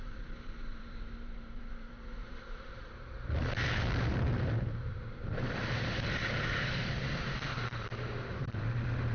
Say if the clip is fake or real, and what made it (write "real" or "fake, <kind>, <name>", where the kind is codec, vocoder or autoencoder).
fake, vocoder, BigVGAN v2